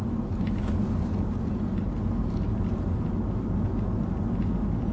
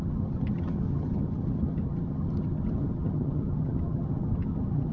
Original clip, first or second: first